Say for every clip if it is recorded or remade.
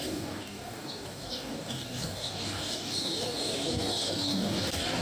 remade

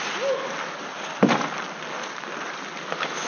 recorded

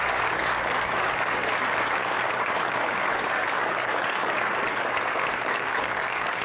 remade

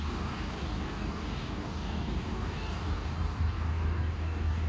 remade